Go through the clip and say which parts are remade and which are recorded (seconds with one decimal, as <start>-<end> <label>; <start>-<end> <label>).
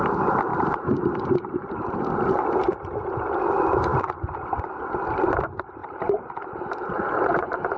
0.0-0.5 recorded; 0.5-1.9 remade; 1.9-5.8 recorded; 5.8-7.8 remade